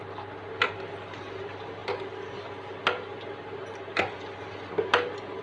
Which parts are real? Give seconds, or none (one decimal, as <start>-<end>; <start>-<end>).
0.0-5.4